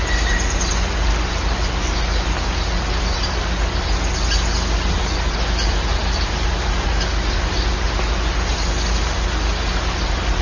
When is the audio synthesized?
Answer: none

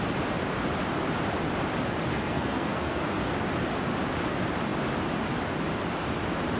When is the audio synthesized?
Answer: 2.1-3.3 (codec, SNAC)

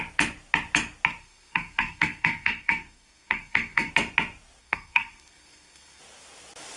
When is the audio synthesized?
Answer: 1.2-3.9 (codec, SNAC); 4.6-6.0

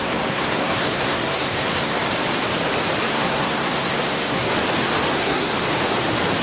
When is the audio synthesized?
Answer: 0.0-2.0 (codec, SNAC); 3.1-4.5; 5.1-5.5

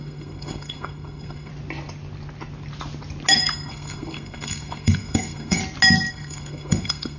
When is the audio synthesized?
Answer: 0.0-1.5 (codec, SNAC); 3.3-5.6; 6.1-7.2

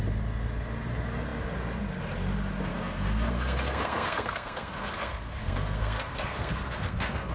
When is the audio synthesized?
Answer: 2.7-7.3 (codec, SNAC)

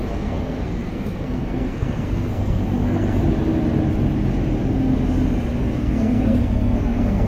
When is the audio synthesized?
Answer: 0.0-3.2 (codec, SNAC); 5.6-7.3